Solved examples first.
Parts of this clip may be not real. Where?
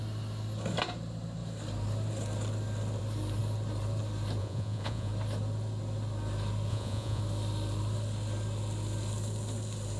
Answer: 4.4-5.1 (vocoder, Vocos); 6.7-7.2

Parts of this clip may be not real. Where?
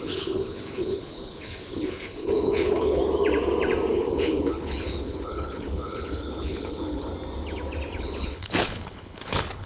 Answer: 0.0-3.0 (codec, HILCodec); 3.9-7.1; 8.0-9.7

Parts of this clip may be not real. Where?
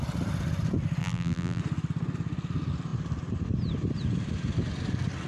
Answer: 1.0-1.6 (vocoder, BigVGAN v2)